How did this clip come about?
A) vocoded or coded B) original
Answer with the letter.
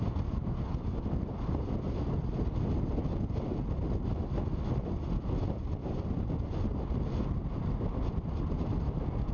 B